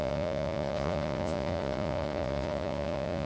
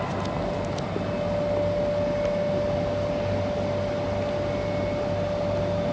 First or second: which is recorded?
second